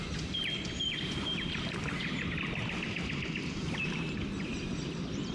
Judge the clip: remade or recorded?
remade